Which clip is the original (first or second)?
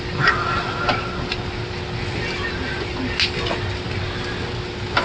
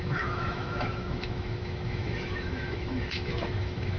first